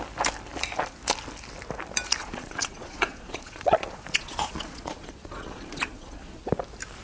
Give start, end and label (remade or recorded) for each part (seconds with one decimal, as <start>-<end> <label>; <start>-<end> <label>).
0.0-2.2 recorded; 2.2-6.4 remade; 6.4-7.0 recorded